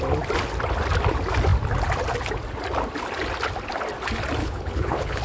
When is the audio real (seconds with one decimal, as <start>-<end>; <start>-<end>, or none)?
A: 0.0-4.4